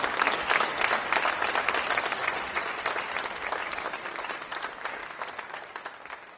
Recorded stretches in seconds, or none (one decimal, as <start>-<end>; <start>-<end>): 0.0-2.2; 2.8-6.4